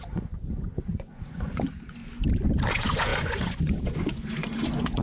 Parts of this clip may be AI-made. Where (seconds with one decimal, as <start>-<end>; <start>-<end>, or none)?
0.0-2.0; 2.7-5.0